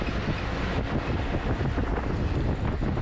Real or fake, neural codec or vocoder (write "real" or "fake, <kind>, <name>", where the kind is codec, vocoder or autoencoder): real